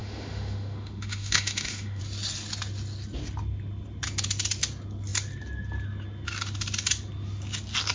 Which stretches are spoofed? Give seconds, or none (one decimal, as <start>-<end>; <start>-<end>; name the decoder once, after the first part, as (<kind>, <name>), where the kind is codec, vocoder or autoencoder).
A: 0.0-2.0 (autoencoder, DAC-VAE)